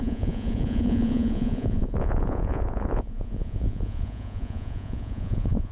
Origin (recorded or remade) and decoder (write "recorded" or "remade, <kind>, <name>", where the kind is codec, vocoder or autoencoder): remade, vocoder, Vocos